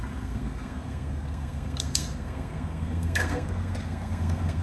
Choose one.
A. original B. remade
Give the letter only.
B